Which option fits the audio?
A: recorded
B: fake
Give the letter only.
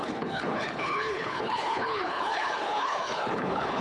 B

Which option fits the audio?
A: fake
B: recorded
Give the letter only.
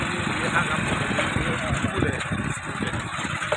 B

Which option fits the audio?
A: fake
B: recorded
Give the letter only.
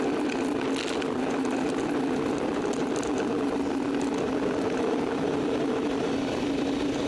B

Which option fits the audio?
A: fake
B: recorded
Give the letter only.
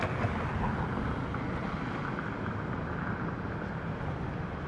B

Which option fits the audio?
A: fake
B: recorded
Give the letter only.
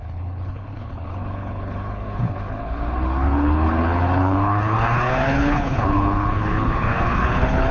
A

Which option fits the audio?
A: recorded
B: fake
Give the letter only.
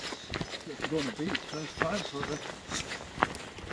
A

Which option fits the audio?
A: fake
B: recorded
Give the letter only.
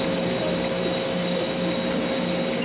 B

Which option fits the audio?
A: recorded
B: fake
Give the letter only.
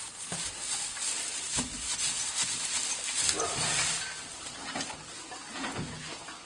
A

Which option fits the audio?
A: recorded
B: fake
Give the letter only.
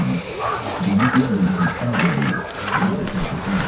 A